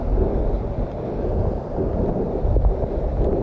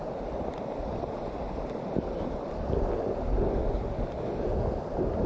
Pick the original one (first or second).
first